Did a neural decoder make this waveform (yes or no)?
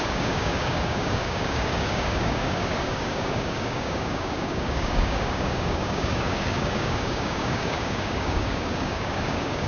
yes